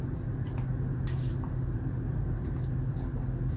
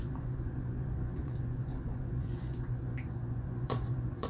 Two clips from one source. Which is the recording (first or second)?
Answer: first